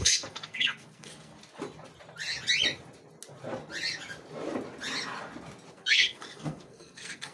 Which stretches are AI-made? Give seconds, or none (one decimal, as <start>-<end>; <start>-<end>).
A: 0.0-1.3; 5.7-7.3